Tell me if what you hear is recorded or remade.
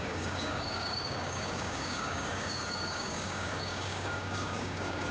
remade